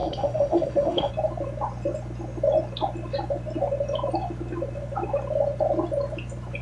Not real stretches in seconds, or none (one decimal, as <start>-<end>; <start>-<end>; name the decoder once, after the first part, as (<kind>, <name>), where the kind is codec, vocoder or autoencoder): 0.0-1.1 (autoencoder, DAC-VAE)